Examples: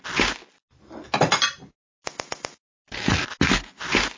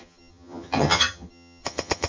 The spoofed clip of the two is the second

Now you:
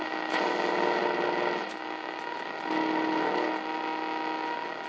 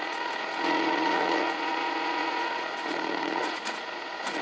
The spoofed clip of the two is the second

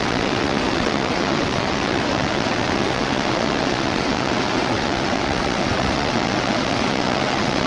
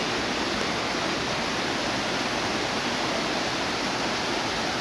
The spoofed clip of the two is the first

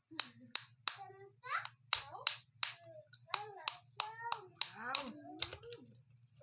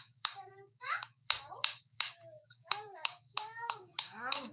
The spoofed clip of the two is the second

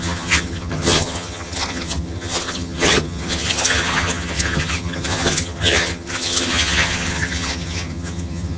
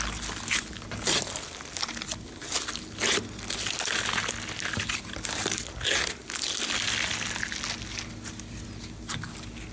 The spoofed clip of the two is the first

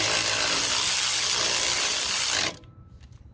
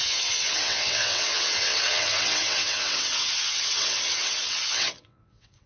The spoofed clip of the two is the second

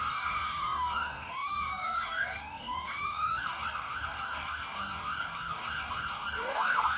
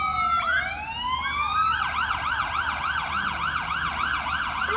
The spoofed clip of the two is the first